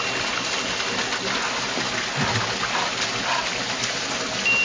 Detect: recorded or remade recorded